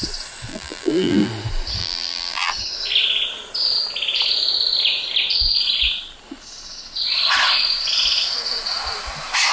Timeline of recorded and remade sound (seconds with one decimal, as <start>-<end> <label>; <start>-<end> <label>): 0.0-0.5 recorded; 0.5-1.3 remade; 1.3-1.8 recorded; 1.8-2.5 remade; 2.5-9.5 recorded